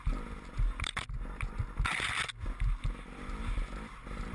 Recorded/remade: recorded